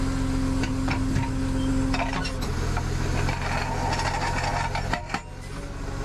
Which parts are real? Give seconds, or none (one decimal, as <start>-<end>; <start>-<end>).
0.0-6.0